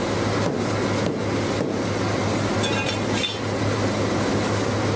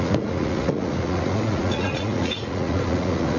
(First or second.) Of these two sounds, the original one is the first